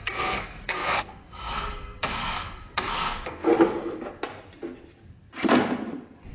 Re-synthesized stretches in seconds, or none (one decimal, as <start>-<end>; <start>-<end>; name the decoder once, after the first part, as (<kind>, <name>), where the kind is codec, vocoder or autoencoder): 0.0-3.5 (codec, SNAC)